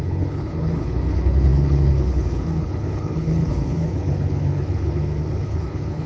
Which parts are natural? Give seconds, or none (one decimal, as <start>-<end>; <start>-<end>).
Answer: none